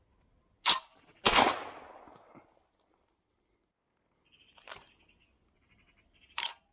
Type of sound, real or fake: real